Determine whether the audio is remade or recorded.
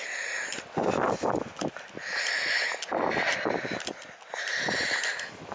recorded